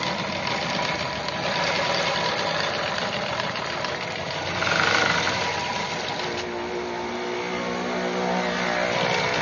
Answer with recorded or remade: recorded